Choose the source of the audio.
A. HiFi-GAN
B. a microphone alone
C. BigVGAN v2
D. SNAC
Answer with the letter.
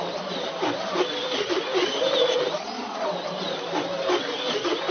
B